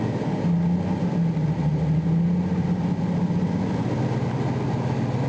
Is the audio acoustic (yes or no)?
yes